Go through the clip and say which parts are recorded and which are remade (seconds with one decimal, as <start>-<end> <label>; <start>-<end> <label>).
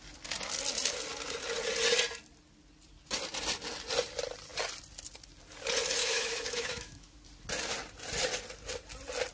0.0-6.0 recorded; 6.0-7.2 remade; 7.2-9.3 recorded